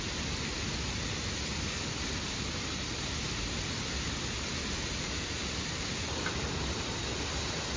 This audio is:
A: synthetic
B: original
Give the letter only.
B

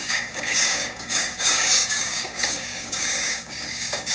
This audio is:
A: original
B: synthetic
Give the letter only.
B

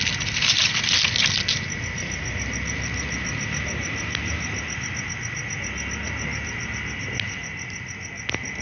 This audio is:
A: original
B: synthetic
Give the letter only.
A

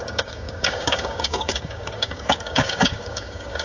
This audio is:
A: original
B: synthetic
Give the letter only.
B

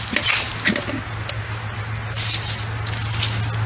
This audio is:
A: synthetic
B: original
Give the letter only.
B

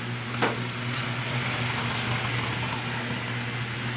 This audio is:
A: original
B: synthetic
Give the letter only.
A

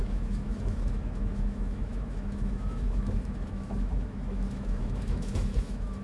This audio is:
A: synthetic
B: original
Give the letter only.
A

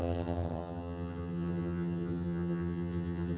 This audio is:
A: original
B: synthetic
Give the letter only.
B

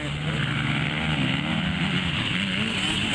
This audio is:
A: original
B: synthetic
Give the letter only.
A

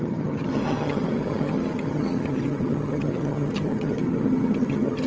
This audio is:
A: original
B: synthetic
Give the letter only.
B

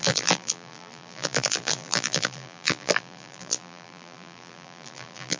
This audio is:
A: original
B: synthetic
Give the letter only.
B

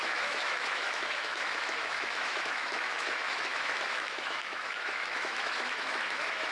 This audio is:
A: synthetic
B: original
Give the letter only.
A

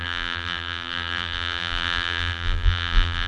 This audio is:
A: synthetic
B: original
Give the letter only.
A